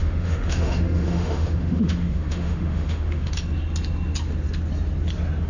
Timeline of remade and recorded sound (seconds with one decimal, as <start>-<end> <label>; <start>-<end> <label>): 0.0-3.3 remade; 3.3-5.5 recorded